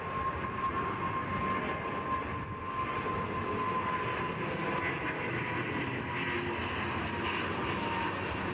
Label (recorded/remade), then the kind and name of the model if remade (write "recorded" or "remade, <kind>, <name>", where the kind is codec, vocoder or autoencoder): recorded